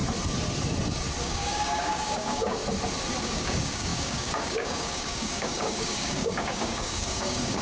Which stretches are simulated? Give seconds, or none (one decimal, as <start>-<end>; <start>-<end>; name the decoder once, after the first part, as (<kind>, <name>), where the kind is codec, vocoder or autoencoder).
1.2-2.6 (codec, DAC); 3.2-7.6